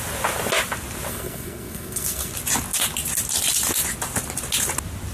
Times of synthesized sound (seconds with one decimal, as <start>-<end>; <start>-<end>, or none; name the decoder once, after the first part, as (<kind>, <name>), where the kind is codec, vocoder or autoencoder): 1.1-2.3 (codec, SNAC)